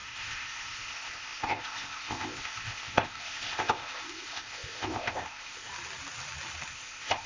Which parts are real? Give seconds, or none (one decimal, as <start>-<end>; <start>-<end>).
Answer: 5.7-6.7